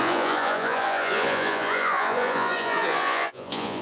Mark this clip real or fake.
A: fake